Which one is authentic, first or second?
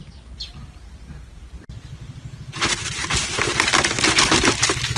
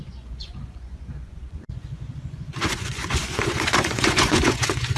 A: first